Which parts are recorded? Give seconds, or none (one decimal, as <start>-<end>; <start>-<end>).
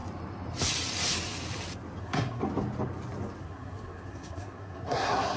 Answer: 0.0-2.0; 2.4-3.4